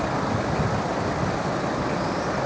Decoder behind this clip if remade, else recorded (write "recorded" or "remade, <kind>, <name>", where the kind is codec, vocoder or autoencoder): recorded